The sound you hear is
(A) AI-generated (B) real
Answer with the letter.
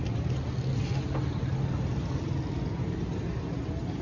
B